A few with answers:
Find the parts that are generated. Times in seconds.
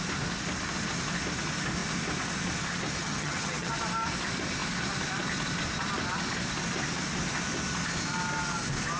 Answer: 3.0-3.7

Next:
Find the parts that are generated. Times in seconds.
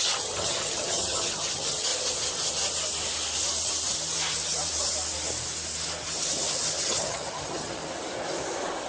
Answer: 0.0-1.9; 6.8-7.8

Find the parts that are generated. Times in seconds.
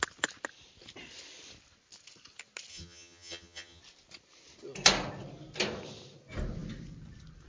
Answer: 2.7-3.8